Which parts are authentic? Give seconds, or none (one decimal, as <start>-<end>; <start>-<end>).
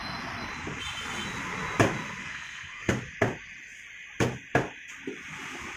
0.0-2.2; 2.9-5.8